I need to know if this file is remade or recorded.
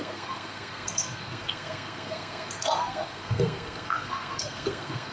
remade